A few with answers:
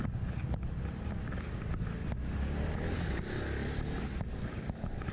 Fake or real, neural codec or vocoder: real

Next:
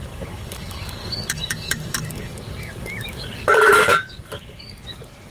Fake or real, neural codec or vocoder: fake, codec, DAC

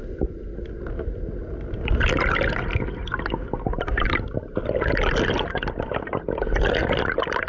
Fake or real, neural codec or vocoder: real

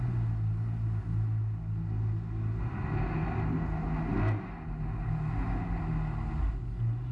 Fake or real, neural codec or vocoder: real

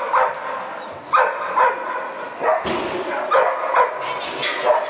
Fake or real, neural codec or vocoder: real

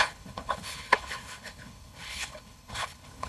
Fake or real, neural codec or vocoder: fake, codec, HILCodec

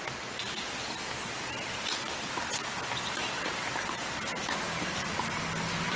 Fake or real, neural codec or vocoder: real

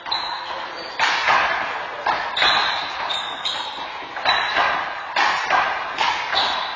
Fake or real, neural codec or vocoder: real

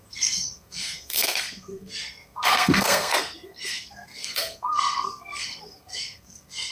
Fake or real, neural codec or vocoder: fake, codec, SNAC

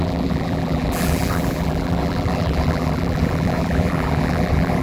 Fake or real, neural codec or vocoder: fake, vocoder, BigVGAN v2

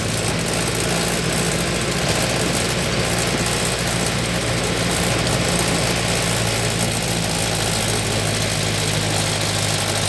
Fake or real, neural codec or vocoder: real